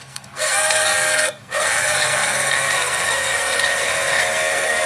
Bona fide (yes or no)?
no